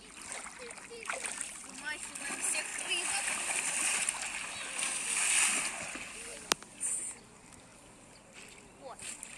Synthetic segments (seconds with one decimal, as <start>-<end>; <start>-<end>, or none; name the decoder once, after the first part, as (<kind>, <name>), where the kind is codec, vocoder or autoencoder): none